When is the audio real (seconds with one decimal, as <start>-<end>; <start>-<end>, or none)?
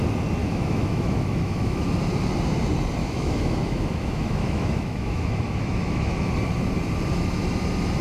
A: 0.0-0.4; 1.8-3.0; 6.3-8.0